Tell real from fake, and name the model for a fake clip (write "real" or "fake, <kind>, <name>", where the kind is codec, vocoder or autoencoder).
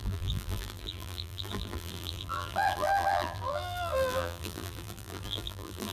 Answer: fake, vocoder, BigVGAN v2